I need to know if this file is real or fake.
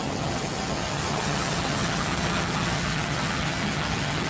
fake